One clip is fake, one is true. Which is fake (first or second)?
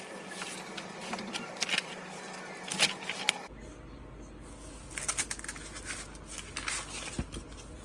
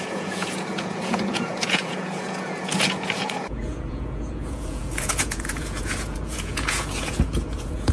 second